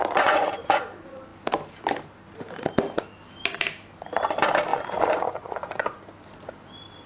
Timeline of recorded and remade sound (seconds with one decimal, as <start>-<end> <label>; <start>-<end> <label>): 0.0-0.8 remade; 0.8-4.7 recorded; 4.7-6.0 remade; 6.0-7.1 recorded